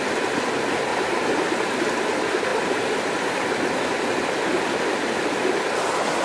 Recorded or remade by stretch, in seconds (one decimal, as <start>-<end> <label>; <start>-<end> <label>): 0.0-0.9 recorded; 0.9-1.7 remade; 1.7-2.5 recorded; 2.5-3.4 remade; 3.4-6.2 recorded